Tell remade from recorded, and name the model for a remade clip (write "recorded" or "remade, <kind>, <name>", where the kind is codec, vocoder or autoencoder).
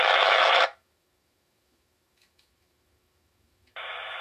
remade, autoencoder, DAC-VAE